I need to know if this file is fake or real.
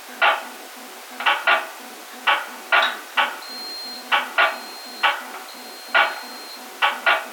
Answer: real